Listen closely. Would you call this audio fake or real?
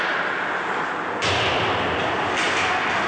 real